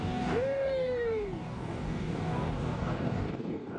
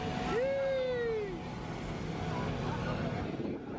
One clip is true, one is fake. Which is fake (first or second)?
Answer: first